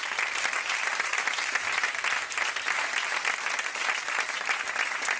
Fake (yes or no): no